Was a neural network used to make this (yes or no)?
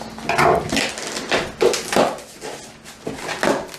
no